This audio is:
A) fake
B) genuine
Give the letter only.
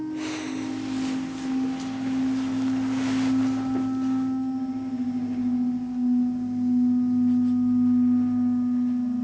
B